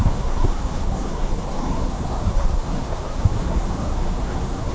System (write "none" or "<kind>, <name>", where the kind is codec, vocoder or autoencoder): codec, SNAC